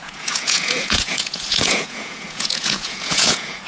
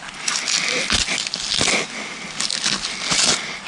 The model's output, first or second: first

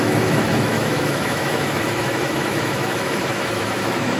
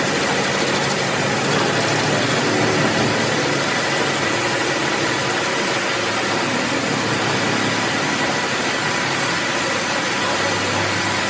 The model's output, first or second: first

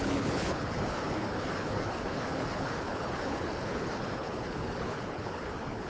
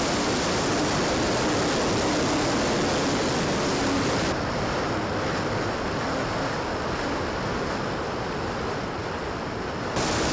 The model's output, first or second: first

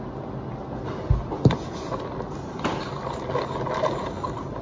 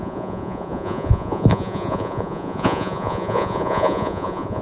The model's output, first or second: second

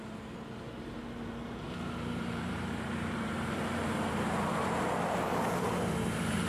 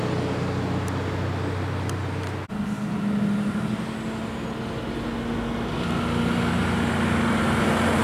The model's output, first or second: first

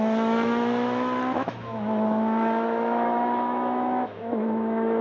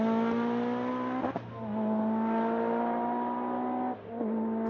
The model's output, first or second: first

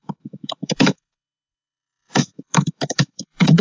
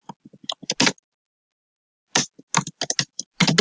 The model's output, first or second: first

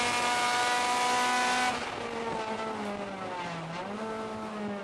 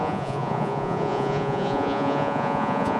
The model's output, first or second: second